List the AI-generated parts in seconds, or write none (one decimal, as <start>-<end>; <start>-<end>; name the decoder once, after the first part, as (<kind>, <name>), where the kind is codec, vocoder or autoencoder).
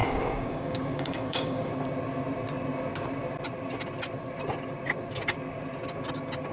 0.0-1.7 (codec, DAC)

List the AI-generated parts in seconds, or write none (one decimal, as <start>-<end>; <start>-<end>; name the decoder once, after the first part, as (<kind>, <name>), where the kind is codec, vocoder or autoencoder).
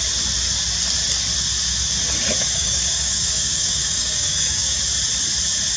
2.4-4.8 (codec, DAC)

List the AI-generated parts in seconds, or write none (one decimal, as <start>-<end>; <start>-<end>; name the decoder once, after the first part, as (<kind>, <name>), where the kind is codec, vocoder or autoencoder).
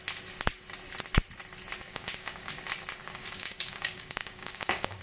1.9-2.5 (codec, DAC); 3.0-5.0